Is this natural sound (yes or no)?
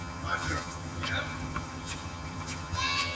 no